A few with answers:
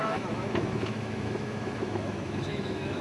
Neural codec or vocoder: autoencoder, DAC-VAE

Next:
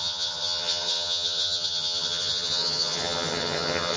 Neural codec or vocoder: vocoder, HiFi-GAN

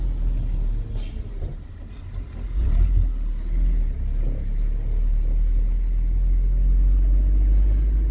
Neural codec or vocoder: none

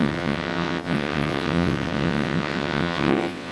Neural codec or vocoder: vocoder, WaveNeXt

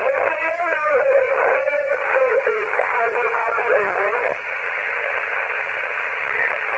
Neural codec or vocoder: vocoder, HiFi-GAN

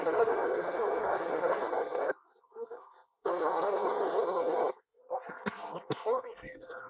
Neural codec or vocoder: codec, SNAC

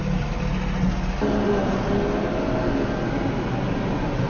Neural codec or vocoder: none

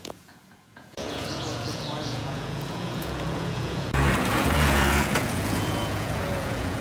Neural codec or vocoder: vocoder, Vocos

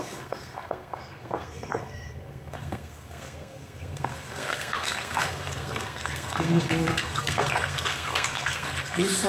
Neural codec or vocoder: codec, SNAC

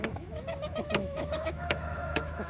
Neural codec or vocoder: autoencoder, DAC-VAE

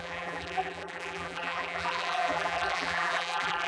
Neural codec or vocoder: vocoder, BigVGAN v2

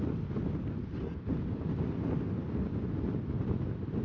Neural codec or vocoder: none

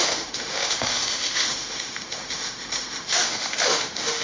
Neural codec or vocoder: autoencoder, DAC-VAE